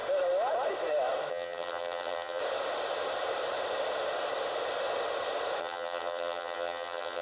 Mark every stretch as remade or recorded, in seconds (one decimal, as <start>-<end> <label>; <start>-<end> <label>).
0.0-1.3 recorded; 1.3-2.4 remade; 2.4-5.6 recorded; 5.6-7.2 remade